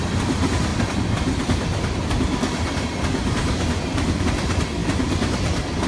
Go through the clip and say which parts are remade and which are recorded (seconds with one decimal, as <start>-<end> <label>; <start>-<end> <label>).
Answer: 0.0-0.7 recorded; 0.7-4.2 remade; 4.2-5.9 recorded

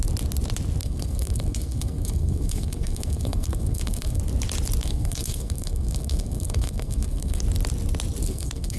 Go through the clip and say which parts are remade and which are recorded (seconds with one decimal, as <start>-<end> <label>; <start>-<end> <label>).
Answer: 0.0-0.8 recorded; 0.8-4.2 remade; 4.2-4.8 recorded; 4.8-7.4 remade; 7.4-8.2 recorded; 8.2-8.8 remade

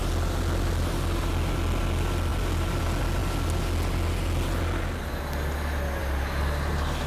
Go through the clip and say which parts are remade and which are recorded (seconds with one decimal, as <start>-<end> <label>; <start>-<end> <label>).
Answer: 0.0-7.1 recorded

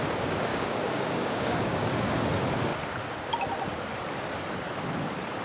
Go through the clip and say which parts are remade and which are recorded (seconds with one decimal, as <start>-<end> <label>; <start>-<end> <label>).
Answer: 0.0-0.5 recorded; 0.5-2.1 remade; 2.1-5.4 recorded

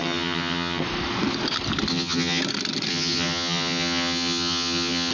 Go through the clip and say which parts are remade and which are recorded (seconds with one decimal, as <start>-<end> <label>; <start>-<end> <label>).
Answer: 0.0-0.8 remade; 0.8-1.9 recorded; 1.9-2.4 remade; 2.4-2.9 recorded; 2.9-5.1 remade

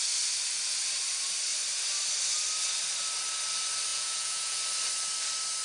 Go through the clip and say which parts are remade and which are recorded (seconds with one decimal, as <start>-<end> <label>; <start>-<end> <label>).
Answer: 0.0-3.9 recorded; 3.9-4.6 remade; 4.6-5.6 recorded